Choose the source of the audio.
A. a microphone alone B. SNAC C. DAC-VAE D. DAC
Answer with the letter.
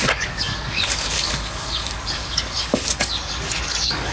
D